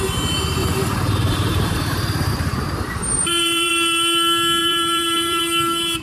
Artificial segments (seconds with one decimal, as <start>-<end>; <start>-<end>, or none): 0.6-3.7; 4.6-5.4

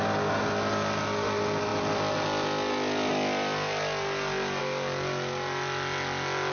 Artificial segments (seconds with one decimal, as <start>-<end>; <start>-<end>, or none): none

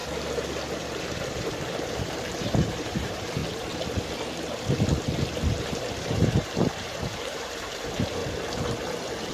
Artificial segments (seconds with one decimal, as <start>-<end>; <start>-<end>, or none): 1.0-3.4; 5.5-8.2